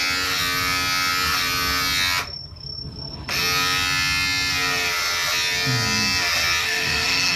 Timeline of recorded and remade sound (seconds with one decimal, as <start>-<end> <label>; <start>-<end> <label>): 0.0-6.6 recorded; 6.6-7.4 remade